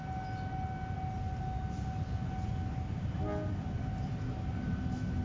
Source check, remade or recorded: recorded